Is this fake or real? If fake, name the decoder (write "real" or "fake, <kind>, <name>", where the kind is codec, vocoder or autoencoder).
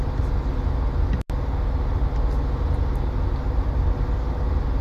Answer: real